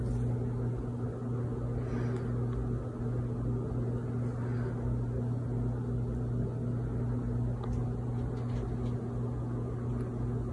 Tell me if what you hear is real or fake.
real